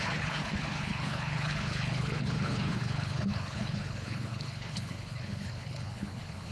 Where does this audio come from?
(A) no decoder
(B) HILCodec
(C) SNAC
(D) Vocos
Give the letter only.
B